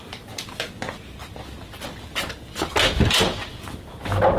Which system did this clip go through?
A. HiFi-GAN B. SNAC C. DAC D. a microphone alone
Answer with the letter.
D